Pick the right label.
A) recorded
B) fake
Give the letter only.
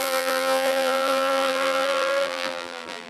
B